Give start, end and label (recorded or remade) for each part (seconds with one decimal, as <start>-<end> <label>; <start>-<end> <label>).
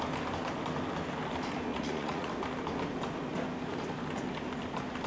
0.0-1.7 recorded; 1.7-2.3 remade; 2.3-5.1 recorded